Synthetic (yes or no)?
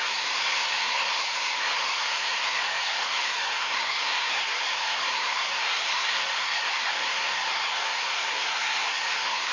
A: yes